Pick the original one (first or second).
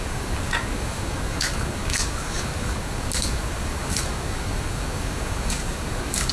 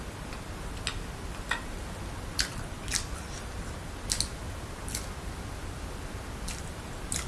second